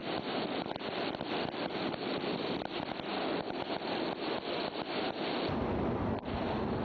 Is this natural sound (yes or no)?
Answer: yes